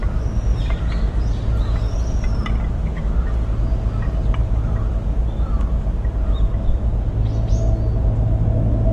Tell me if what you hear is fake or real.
real